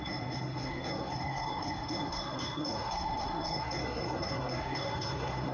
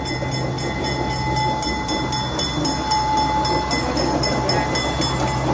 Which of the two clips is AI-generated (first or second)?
first